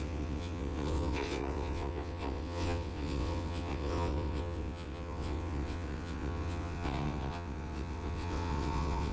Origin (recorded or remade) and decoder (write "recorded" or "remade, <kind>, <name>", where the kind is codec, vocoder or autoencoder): remade, vocoder, WaveNeXt